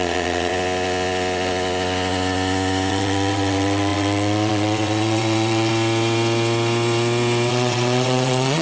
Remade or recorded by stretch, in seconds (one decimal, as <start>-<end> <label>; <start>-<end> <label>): 0.0-0.5 remade; 0.5-2.9 recorded; 2.9-5.7 remade; 5.7-7.5 recorded; 7.5-8.6 remade